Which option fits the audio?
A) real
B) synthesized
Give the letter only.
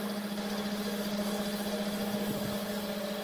A